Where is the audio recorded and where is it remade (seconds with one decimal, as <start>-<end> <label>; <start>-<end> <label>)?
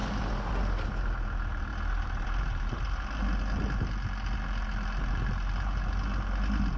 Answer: 0.0-1.7 recorded; 1.7-3.2 remade; 3.2-6.8 recorded